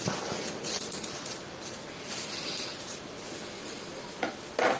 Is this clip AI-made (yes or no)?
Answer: no